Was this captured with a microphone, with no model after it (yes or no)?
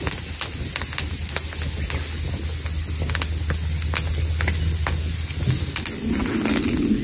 yes